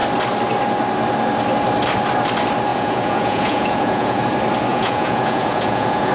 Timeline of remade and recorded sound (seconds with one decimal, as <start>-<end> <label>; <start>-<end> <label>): 0.0-2.7 recorded; 2.7-4.2 remade; 4.2-4.7 recorded; 4.7-6.1 remade